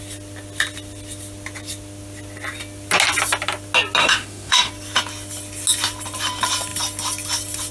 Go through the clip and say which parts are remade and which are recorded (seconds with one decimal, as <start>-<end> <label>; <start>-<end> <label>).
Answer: 0.0-4.0 recorded; 4.0-4.7 remade; 4.7-7.7 recorded